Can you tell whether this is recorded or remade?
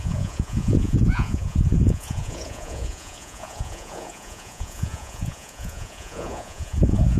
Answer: remade